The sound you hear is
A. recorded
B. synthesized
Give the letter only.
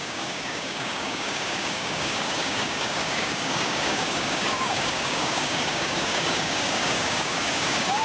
B